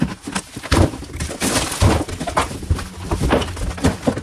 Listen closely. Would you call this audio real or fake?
real